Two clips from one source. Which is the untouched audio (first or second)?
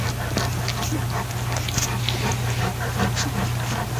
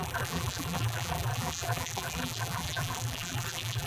first